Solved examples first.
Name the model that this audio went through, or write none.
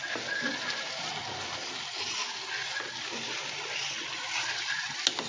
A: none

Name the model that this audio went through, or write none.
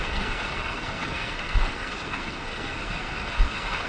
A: codec, SNAC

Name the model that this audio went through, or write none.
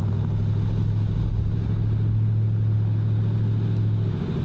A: none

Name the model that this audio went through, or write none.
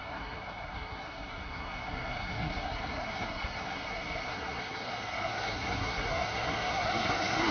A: codec, SNAC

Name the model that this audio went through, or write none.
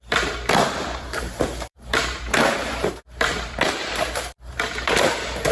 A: vocoder, BigVGAN v2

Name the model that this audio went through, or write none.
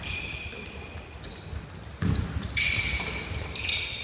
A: none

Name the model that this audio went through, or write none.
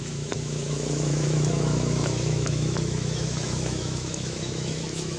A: autoencoder, DAC-VAE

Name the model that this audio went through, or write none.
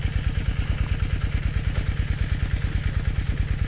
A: none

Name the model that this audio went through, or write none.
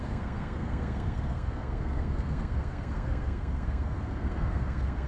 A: codec, SNAC